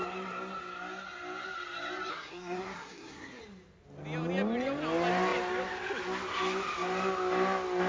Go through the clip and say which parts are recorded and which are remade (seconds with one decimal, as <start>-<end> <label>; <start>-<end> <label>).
0.0-2.1 recorded; 2.1-3.4 remade; 3.4-7.9 recorded